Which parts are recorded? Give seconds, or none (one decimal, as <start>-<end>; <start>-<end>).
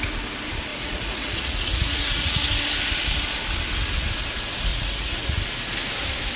0.0-0.7; 2.4-4.7; 5.4-6.4